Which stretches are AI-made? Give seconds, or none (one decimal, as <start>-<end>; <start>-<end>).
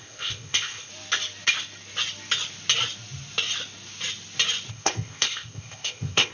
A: 0.0-0.9; 4.7-6.3